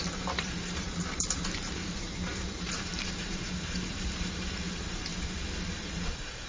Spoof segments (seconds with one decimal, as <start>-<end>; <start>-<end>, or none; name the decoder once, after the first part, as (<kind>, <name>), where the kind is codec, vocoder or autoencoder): 0.0-5.1 (vocoder, BigVGAN v2); 5.7-6.5